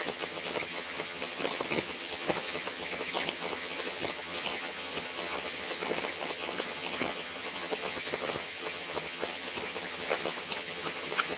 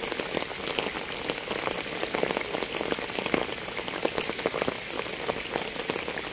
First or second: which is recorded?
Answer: second